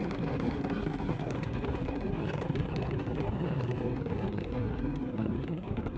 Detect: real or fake fake